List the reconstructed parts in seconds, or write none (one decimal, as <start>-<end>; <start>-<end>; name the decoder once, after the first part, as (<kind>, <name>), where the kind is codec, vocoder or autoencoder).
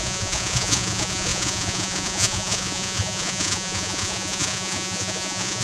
0.0-5.6 (vocoder, Vocos)